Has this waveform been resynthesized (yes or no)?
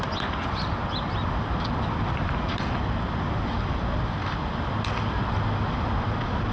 no